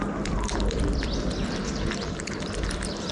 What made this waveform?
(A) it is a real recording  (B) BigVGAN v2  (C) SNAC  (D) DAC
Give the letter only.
B